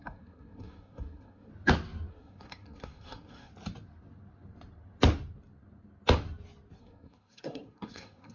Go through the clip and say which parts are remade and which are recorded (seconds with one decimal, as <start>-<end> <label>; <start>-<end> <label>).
0.0-1.5 remade; 1.5-2.1 recorded; 2.1-3.5 remade; 3.5-6.8 recorded; 6.8-8.3 remade